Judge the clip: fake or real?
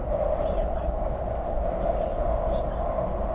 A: real